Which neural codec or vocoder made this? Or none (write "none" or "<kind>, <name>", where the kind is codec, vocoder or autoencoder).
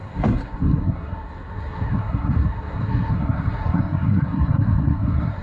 codec, SNAC